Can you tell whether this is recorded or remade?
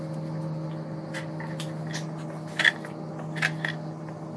recorded